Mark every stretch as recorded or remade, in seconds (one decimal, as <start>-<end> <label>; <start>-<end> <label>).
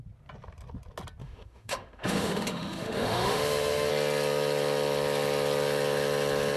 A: 0.0-1.2 recorded; 1.2-3.9 remade; 3.9-6.6 recorded